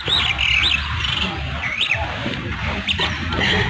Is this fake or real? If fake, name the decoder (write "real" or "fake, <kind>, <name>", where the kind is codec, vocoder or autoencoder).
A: real